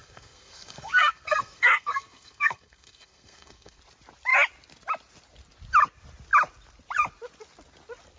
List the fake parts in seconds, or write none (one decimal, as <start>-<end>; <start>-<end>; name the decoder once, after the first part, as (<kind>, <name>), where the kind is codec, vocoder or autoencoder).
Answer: 0.0-3.8 (codec, SNAC)